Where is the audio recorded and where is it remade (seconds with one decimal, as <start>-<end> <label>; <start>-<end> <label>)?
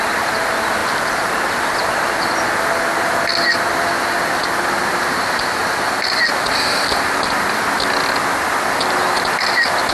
0.0-9.9 recorded